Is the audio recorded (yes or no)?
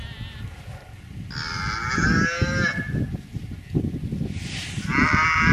yes